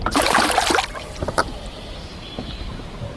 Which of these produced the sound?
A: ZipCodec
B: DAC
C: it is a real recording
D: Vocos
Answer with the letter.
C